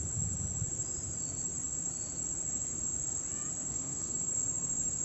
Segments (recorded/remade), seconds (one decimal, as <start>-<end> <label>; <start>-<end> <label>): 0.0-3.6 recorded; 3.6-4.4 remade; 4.4-5.0 recorded